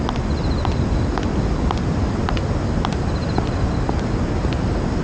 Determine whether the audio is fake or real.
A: real